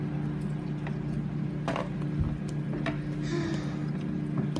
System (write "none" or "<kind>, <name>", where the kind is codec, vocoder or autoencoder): none